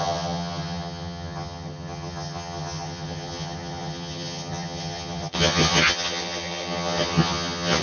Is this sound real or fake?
fake